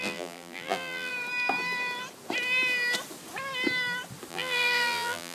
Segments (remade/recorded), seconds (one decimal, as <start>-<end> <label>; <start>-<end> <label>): 0.0-1.1 remade; 1.1-4.3 recorded; 4.3-5.3 remade